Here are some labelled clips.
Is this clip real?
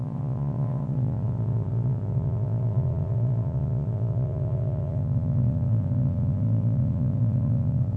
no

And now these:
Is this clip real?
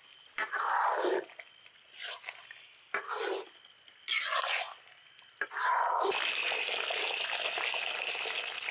yes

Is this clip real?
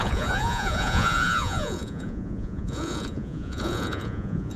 no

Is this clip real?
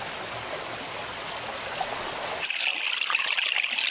yes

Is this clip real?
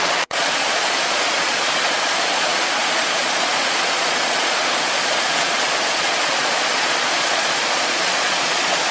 no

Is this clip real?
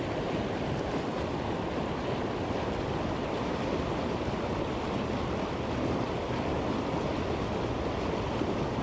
yes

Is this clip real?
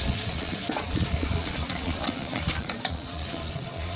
no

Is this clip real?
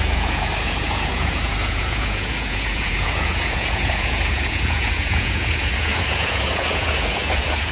no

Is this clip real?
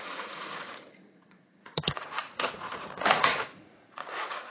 no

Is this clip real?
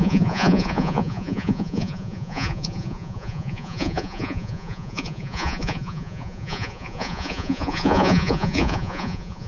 no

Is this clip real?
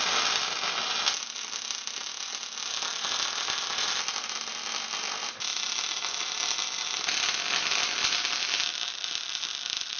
yes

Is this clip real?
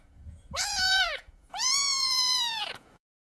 no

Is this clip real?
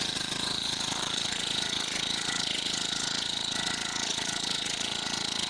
no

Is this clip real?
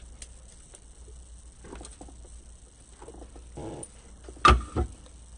yes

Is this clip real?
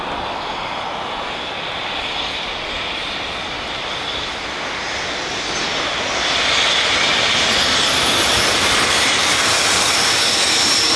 yes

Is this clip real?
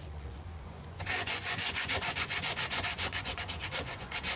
no